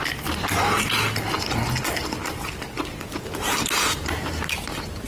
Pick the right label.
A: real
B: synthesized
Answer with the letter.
A